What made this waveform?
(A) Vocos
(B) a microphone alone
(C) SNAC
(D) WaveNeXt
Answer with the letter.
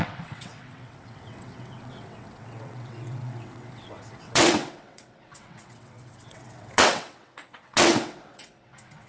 D